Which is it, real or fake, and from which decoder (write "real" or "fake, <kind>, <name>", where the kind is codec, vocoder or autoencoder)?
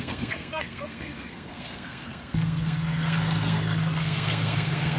fake, codec, SNAC